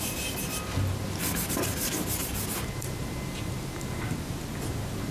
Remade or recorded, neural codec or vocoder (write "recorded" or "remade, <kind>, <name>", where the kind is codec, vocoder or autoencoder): recorded